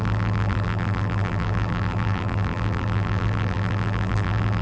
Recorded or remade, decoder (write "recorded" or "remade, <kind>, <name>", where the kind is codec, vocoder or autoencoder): remade, vocoder, BigVGAN v2